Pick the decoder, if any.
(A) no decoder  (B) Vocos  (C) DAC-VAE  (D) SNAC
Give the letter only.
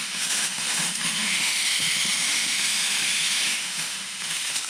C